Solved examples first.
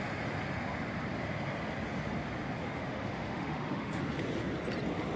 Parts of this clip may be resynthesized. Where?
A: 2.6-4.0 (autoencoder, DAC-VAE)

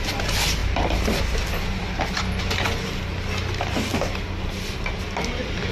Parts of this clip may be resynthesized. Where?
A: none

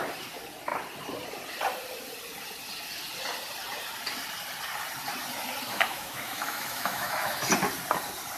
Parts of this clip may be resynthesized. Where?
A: 5.7-7.5 (autoencoder, DAC-VAE)

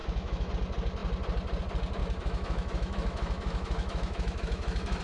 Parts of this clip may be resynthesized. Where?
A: 0.0-0.5 (autoencoder, DAC-VAE); 2.0-5.0

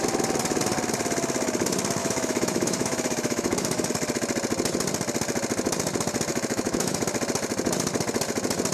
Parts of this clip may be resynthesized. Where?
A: 2.0-3.9 (autoencoder, DAC-VAE); 6.3-7.0

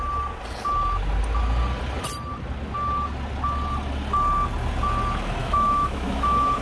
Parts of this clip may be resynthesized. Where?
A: 5.4-6.6 (autoencoder, DAC-VAE)

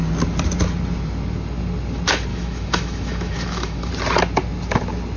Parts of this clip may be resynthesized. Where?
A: 2.3-3.9 (autoencoder, DAC-VAE)

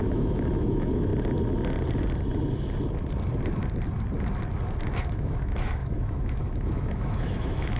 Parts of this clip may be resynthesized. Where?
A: 0.0-1.1 (autoencoder, DAC-VAE); 5.0-7.8